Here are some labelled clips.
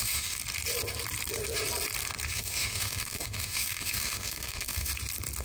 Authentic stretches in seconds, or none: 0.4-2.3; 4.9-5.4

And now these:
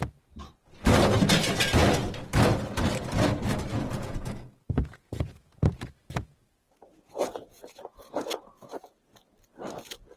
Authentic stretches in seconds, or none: 0.0-3.7; 8.7-10.2

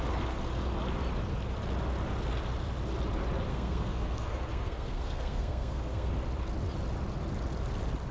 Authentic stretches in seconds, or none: 0.0-3.5; 6.1-8.1

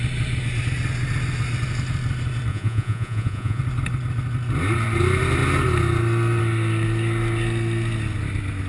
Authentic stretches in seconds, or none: 0.0-2.5; 3.6-8.7

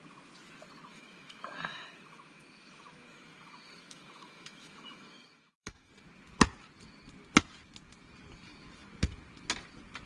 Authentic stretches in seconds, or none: 0.0-0.9; 5.9-10.1